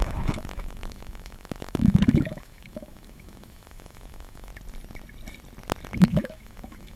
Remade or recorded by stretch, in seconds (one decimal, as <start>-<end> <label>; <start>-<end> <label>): 0.0-4.5 remade; 4.5-6.0 recorded; 6.0-7.0 remade